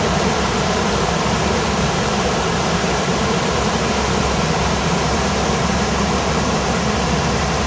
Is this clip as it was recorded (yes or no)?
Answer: no